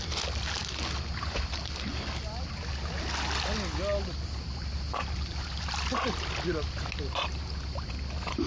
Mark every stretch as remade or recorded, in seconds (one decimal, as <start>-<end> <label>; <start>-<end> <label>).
0.0-8.5 recorded